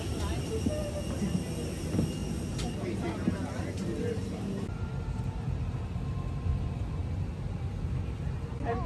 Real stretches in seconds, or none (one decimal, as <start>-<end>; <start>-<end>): 0.0-8.9